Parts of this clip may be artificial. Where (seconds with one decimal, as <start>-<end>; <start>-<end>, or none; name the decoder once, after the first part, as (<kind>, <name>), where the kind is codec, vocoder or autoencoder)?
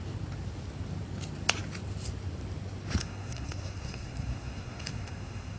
3.0-5.6 (codec, SNAC)